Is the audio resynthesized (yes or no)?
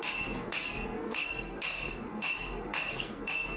yes